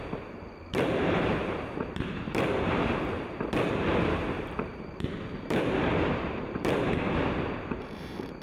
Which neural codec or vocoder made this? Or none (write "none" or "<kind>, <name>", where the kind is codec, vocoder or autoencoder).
vocoder, BigVGAN v2